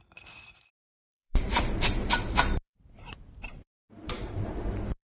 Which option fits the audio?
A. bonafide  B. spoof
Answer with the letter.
B